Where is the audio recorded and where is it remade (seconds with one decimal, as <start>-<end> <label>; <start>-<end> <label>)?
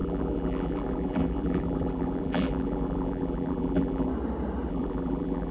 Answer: 0.0-4.1 remade; 4.1-4.7 recorded; 4.7-5.5 remade